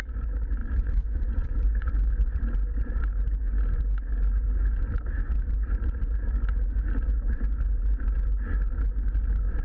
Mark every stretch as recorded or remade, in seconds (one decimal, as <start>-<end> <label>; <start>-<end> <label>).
0.0-0.6 recorded; 0.6-2.4 remade; 2.4-9.6 recorded